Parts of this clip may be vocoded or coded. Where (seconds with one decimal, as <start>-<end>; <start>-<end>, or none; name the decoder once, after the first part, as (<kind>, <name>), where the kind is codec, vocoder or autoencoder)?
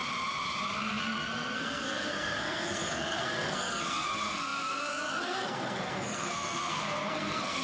0.8-7.6 (codec, SNAC)